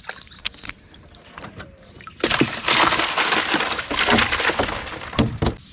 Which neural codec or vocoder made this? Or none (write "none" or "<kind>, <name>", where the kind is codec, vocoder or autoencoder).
none